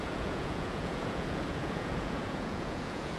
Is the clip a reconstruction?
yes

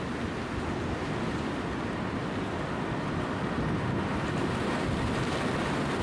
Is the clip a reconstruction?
no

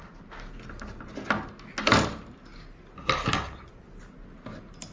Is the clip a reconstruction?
no